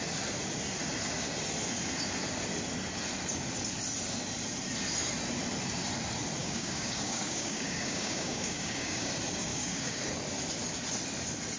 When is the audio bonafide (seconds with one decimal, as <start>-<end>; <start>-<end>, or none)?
0.0-6.4; 9.1-9.5; 10.0-11.6